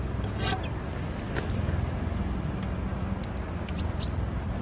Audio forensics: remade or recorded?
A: recorded